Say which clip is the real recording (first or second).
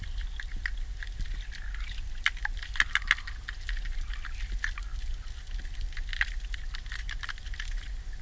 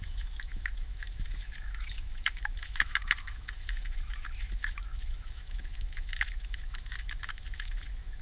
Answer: first